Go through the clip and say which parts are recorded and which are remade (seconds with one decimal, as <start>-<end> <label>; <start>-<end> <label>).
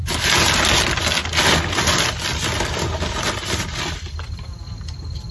0.0-5.3 recorded